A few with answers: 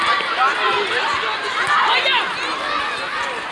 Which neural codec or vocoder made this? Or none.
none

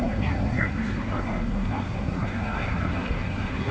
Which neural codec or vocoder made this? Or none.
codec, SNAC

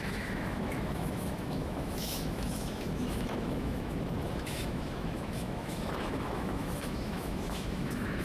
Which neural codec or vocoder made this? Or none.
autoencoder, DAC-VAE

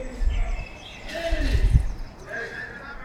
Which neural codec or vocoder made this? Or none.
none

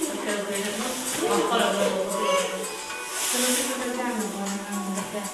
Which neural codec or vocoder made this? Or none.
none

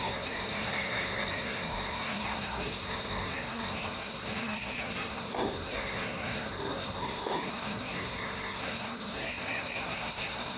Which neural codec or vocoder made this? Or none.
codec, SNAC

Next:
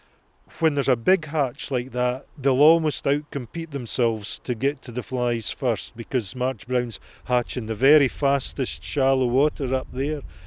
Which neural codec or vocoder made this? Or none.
none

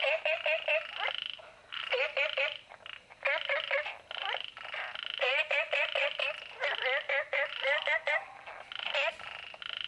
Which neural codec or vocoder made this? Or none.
none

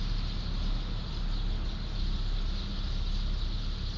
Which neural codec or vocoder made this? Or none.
none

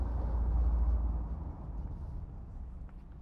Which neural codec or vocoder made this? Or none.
none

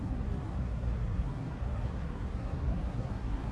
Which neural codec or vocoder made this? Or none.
codec, SNAC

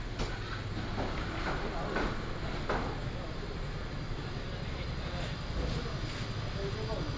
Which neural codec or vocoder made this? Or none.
none